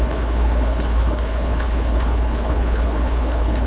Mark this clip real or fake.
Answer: fake